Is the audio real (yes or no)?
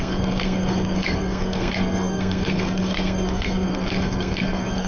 no